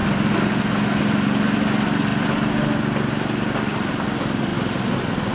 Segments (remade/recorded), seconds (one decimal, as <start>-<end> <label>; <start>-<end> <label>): 0.0-5.3 recorded